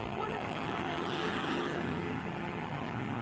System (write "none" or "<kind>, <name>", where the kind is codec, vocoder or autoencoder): vocoder, HiFi-GAN